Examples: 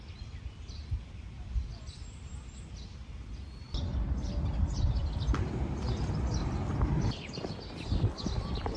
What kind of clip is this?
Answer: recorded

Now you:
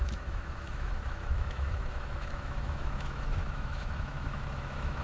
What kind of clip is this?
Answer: remade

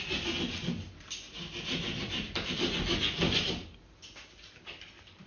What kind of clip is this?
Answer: recorded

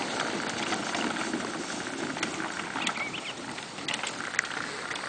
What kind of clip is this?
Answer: recorded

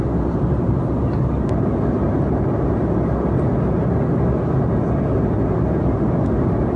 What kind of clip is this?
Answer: recorded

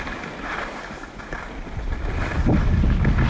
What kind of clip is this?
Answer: recorded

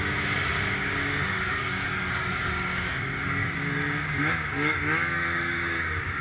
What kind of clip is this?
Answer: remade